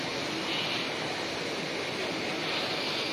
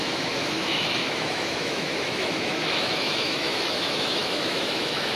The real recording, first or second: first